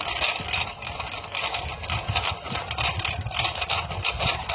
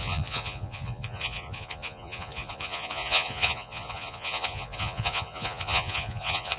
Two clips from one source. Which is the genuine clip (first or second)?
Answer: first